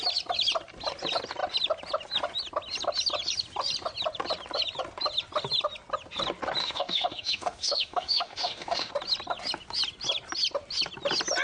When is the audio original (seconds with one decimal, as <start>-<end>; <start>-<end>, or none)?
0.0-6.6; 8.9-11.4